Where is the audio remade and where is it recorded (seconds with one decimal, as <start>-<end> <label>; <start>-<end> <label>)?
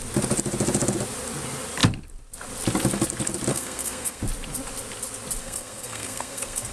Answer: 0.0-3.5 recorded; 3.5-4.2 remade; 4.2-5.4 recorded; 5.4-6.7 remade